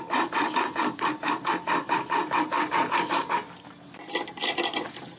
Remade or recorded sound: recorded